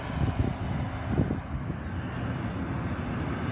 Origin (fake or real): real